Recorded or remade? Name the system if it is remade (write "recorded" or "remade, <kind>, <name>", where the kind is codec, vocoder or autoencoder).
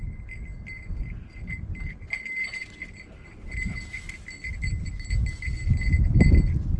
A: recorded